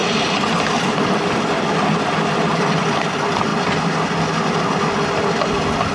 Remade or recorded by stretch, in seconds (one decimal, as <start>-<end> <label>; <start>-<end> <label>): 0.0-5.9 recorded